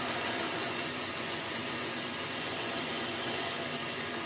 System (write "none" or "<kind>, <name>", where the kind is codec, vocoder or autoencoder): vocoder, Vocos